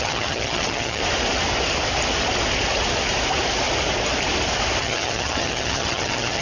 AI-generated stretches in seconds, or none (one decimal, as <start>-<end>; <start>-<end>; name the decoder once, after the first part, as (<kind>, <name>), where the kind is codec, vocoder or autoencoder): 0.0-1.0 (vocoder, HiFi-GAN); 4.8-6.4